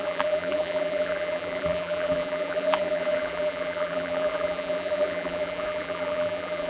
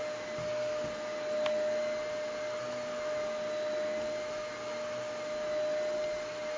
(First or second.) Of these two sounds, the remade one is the first